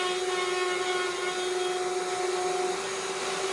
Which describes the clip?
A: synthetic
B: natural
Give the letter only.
B